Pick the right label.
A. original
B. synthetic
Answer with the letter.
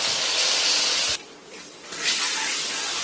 A